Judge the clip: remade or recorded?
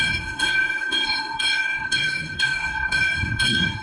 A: remade